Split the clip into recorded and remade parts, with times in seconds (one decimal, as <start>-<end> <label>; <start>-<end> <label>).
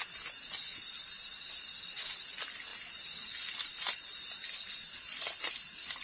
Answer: 0.0-6.0 recorded